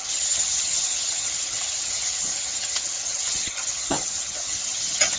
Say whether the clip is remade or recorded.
remade